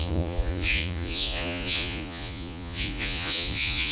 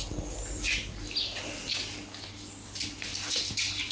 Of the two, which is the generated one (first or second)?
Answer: first